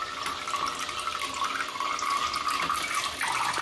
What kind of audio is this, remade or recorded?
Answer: recorded